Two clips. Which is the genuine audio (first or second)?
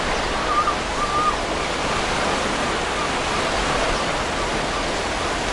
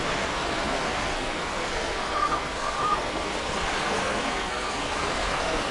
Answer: first